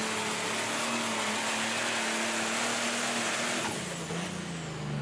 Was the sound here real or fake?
real